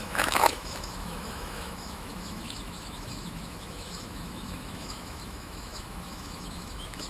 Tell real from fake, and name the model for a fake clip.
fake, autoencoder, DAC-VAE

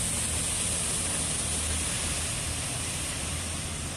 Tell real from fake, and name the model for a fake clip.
real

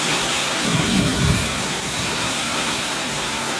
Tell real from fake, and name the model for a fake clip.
fake, codec, SNAC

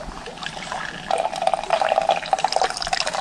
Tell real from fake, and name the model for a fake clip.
real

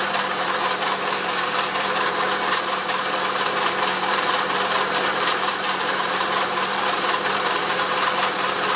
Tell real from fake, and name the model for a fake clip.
fake, vocoder, BigVGAN v2